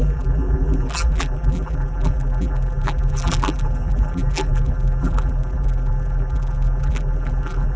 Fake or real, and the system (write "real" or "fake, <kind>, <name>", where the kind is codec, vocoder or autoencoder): fake, vocoder, BigVGAN v2